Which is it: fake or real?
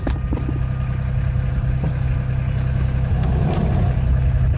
real